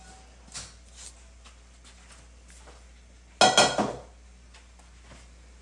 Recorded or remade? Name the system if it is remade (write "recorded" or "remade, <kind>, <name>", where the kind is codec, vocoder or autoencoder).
recorded